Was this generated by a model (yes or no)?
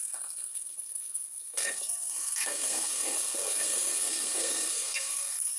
yes